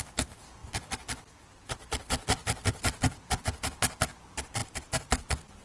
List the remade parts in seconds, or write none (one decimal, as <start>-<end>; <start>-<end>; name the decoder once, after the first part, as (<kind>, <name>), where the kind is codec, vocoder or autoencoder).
none

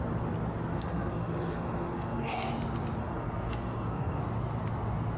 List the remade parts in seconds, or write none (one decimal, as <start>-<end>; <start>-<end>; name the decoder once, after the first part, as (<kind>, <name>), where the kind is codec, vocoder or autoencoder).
0.7-2.5 (codec, SNAC); 3.0-4.2

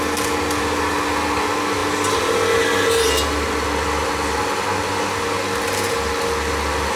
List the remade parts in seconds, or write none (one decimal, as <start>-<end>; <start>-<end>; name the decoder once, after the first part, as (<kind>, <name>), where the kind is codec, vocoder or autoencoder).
none

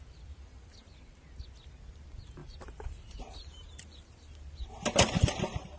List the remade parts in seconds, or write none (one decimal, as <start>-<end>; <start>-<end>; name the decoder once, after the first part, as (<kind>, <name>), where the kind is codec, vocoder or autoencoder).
2.4-5.8 (vocoder, BigVGAN v2)

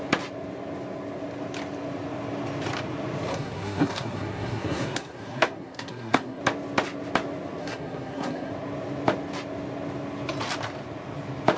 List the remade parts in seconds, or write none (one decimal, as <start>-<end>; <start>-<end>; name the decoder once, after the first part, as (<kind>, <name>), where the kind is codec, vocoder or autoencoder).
3.3-6.4 (codec, SNAC); 7.6-8.5

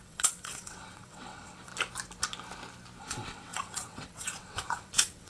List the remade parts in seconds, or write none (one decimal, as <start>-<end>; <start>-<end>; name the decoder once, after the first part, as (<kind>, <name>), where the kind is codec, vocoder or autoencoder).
0.0-1.7 (vocoder, WaveNeXt); 3.0-5.3